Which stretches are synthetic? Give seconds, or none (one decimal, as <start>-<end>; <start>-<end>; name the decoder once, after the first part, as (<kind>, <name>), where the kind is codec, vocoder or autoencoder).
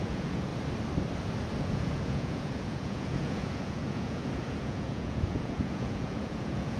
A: 0.0-0.5 (vocoder, Vocos); 1.6-6.8